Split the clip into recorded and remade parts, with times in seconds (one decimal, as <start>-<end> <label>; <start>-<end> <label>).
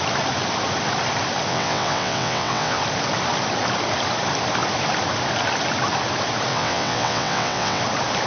0.0-1.5 recorded; 1.5-2.8 remade; 2.8-6.5 recorded; 6.5-7.8 remade; 7.8-8.3 recorded